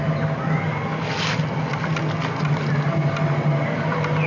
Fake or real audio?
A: real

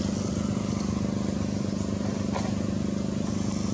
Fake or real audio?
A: real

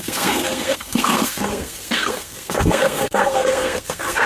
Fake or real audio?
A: fake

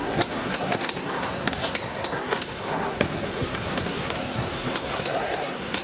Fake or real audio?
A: fake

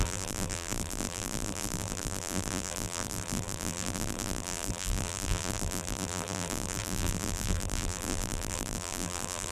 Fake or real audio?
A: fake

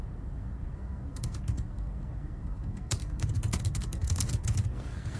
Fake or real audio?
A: fake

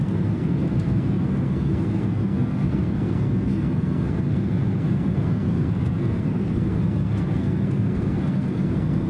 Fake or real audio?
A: fake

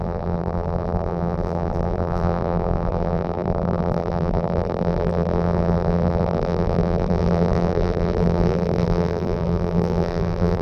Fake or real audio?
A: fake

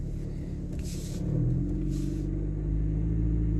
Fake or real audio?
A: real